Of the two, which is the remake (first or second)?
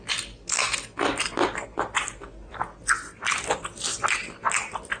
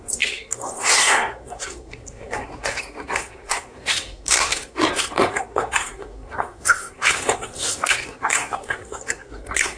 second